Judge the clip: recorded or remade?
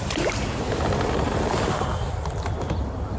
recorded